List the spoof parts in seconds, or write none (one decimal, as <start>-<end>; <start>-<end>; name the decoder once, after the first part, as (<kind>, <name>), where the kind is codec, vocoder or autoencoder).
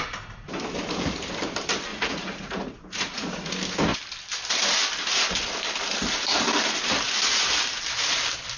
1.9-3.5 (vocoder, Vocos)